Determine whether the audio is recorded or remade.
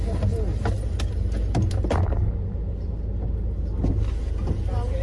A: recorded